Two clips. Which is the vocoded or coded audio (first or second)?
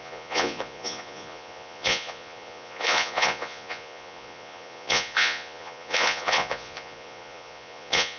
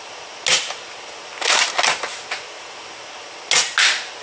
first